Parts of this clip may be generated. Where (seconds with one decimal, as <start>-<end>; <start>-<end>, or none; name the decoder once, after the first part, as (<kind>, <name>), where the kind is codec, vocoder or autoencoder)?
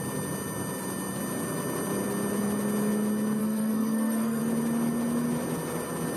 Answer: 3.4-4.4 (codec, SNAC)